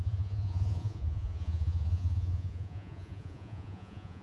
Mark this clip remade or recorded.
remade